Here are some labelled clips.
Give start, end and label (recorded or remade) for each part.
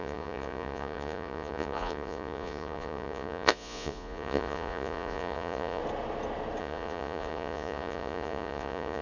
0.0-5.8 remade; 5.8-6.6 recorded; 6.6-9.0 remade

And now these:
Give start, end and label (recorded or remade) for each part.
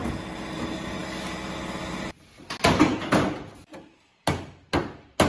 0.0-5.3 recorded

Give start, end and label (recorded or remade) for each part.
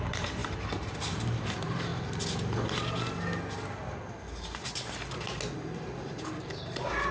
0.0-1.9 remade; 1.9-6.2 recorded; 6.2-7.1 remade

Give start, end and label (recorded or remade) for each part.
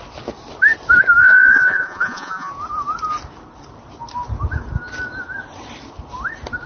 0.0-1.2 recorded; 1.2-2.5 remade; 2.5-6.7 recorded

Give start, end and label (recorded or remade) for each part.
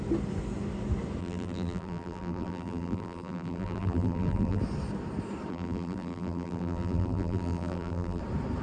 0.0-1.2 recorded; 1.2-4.6 remade; 4.6-5.5 recorded; 5.5-8.2 remade; 8.2-8.6 recorded